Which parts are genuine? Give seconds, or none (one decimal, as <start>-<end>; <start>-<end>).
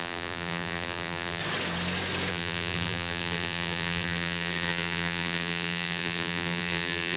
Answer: 1.4-2.3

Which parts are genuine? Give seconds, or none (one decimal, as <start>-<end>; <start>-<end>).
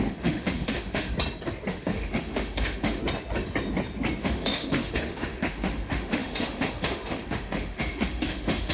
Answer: 1.1-1.7; 3.0-4.2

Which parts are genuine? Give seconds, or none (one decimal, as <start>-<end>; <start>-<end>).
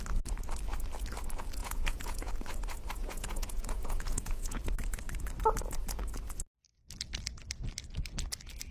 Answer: 0.0-1.6; 2.3-3.0; 4.6-8.7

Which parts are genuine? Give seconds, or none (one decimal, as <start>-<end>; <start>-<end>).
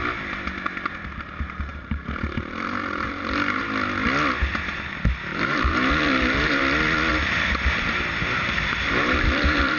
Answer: 0.0-1.7; 3.6-5.3; 6.6-7.1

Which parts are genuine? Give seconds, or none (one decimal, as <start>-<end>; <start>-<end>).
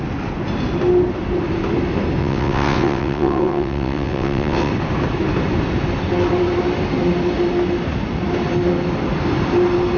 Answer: 0.0-2.2; 4.7-10.0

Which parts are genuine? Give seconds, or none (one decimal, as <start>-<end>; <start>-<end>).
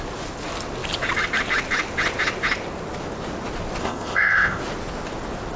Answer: 0.0-3.8; 4.6-5.6